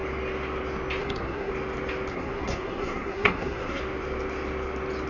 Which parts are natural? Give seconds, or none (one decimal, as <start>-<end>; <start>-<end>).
0.0-1.0; 1.5-2.1; 3.8-5.1